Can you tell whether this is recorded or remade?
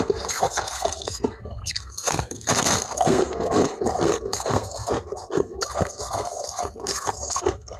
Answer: remade